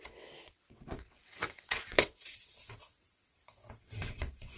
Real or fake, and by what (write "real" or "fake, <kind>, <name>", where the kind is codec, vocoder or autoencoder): fake, vocoder, WaveNeXt